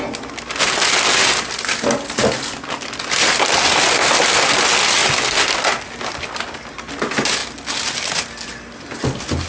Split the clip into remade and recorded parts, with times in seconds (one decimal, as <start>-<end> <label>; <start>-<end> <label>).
0.0-9.5 recorded